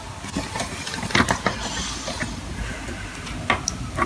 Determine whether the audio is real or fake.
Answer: real